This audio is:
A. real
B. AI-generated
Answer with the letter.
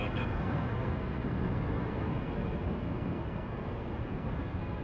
B